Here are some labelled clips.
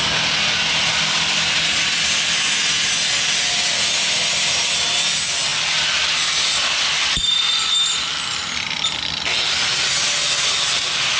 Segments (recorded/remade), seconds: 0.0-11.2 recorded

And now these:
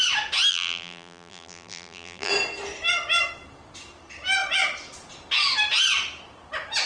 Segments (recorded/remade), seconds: 0.0-0.5 recorded; 0.5-2.3 remade; 2.3-6.9 recorded

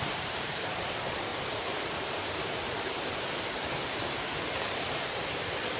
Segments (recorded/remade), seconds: 0.0-5.8 remade

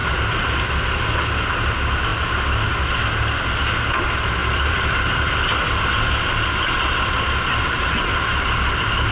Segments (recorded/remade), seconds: 0.0-0.6 remade; 0.6-2.1 recorded; 2.1-2.7 remade; 2.7-4.4 recorded; 4.4-8.7 remade; 8.7-9.1 recorded

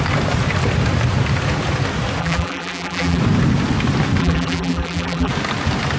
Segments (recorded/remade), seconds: 0.0-2.2 recorded; 2.2-3.2 remade; 3.2-4.2 recorded; 4.2-5.3 remade; 5.3-6.0 recorded

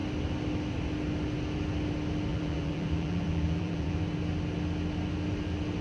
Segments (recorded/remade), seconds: 0.0-2.3 recorded; 2.3-4.0 remade; 4.0-5.8 recorded

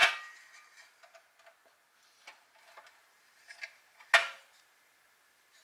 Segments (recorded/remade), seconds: 0.0-5.6 recorded